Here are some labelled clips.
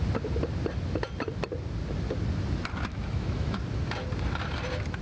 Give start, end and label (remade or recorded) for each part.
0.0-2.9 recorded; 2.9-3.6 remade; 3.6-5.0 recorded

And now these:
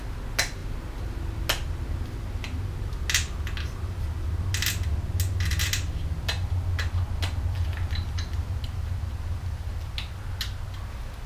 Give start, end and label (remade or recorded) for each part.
0.0-11.3 recorded

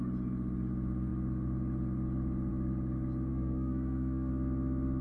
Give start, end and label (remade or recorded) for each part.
0.0-3.3 recorded; 3.3-4.3 remade; 4.3-5.0 recorded